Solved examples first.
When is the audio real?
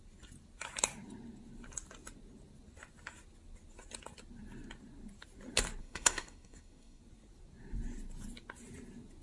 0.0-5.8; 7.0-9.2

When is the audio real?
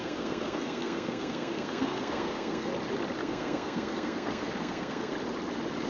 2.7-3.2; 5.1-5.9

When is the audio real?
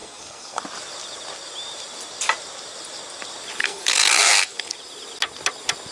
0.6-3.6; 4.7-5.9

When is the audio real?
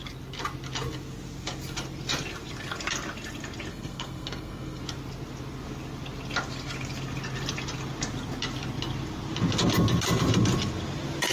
0.0-3.7; 4.8-11.3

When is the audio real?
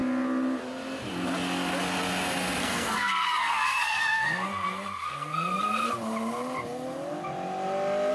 0.0-2.6; 5.9-8.1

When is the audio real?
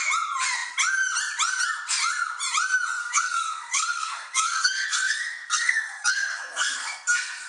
0.0-3.0